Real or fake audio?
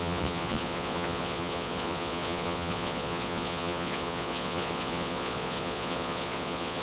fake